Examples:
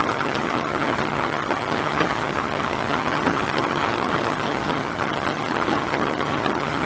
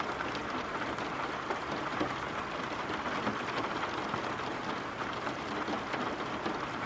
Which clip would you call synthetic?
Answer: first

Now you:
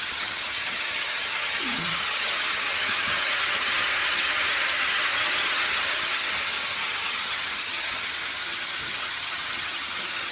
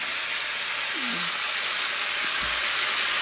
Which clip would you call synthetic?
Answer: first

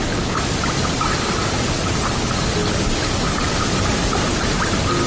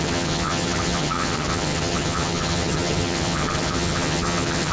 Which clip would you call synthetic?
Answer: second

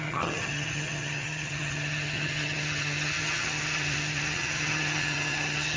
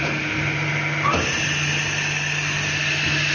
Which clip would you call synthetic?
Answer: first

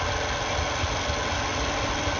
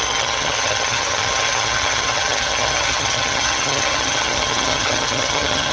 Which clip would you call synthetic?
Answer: second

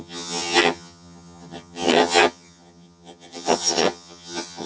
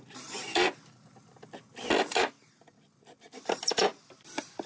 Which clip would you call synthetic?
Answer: first